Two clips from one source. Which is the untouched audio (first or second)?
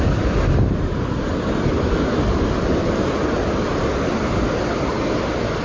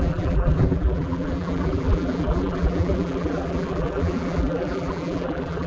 first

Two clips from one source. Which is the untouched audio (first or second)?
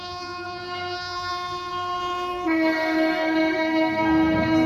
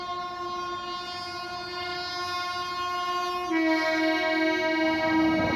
second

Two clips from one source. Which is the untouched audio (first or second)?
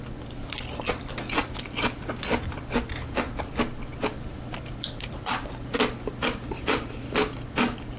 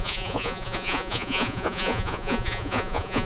first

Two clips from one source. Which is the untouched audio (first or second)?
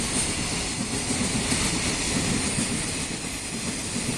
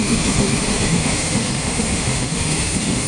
first